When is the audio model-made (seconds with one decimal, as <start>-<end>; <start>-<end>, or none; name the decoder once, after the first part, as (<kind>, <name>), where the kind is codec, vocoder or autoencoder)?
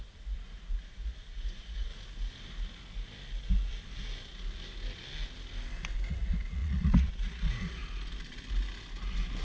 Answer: 0.0-1.9 (vocoder, Vocos); 6.1-7.8